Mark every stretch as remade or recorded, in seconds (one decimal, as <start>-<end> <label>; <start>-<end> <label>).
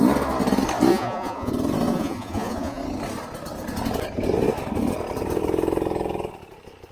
0.0-0.9 recorded; 0.9-1.5 remade; 1.5-1.9 recorded; 1.9-2.8 remade; 2.8-6.9 recorded